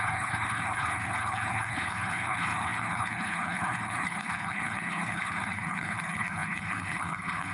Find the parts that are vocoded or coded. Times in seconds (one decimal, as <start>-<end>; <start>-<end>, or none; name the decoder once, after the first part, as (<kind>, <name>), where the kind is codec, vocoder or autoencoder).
0.0-7.5 (codec, HILCodec)